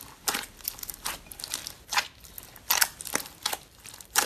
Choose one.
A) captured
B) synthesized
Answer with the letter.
A